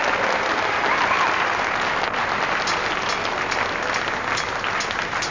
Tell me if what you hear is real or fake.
real